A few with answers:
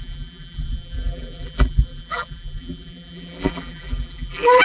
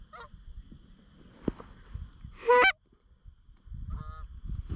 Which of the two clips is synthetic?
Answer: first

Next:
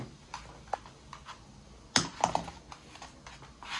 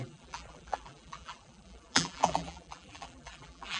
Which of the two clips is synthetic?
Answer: second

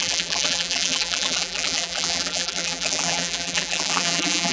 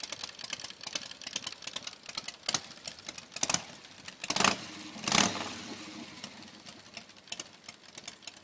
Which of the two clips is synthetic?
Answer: first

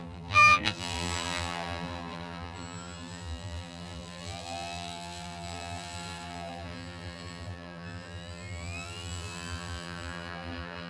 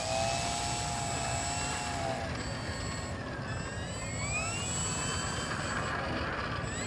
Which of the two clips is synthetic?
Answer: first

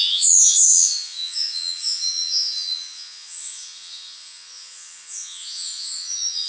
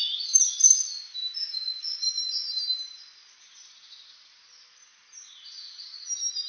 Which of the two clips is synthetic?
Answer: first